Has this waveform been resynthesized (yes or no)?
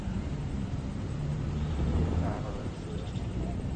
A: yes